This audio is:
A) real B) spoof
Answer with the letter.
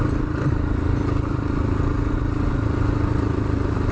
A